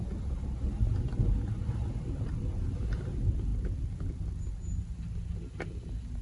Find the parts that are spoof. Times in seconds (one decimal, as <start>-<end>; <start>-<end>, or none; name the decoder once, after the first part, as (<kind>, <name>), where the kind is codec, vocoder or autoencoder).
none